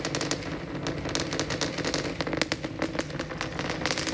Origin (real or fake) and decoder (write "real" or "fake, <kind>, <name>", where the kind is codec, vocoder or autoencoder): real